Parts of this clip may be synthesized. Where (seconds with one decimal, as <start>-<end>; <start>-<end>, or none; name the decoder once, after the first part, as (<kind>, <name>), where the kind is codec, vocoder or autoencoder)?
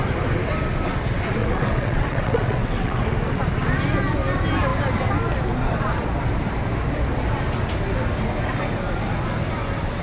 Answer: 1.4-3.0 (vocoder, WaveNeXt)